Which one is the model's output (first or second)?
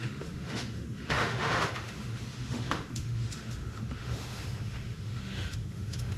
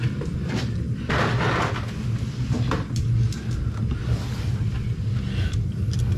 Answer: first